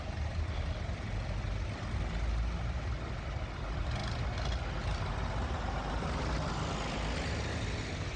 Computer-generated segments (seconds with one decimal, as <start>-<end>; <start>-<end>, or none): none